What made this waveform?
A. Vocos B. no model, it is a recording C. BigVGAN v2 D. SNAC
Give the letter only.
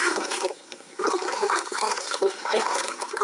D